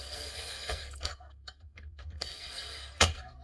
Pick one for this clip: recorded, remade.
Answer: remade